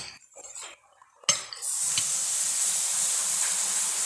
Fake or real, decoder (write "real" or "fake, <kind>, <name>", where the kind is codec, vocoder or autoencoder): real